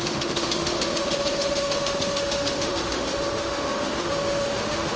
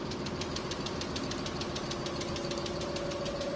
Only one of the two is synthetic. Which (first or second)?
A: first